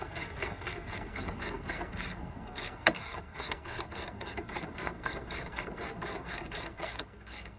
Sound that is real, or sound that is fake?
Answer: fake